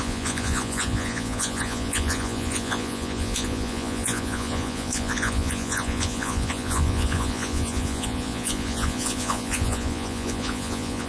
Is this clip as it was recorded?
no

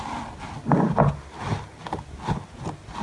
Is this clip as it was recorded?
yes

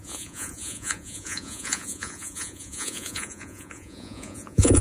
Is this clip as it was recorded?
no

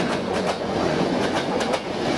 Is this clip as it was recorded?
no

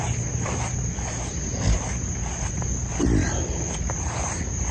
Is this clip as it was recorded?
yes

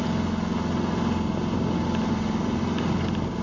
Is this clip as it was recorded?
yes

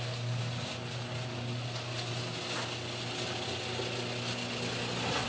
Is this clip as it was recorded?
yes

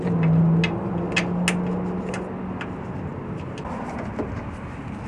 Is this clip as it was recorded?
yes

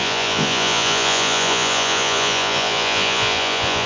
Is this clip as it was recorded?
no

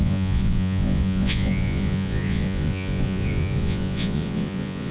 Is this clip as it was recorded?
no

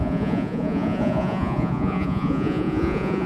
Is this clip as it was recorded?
no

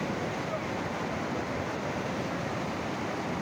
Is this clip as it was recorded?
yes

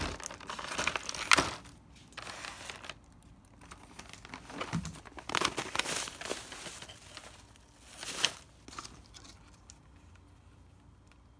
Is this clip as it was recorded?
yes